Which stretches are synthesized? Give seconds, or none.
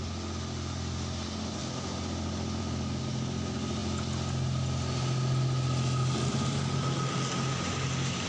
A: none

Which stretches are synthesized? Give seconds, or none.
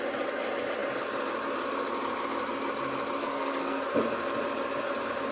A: 3.2-3.8 (codec, SNAC)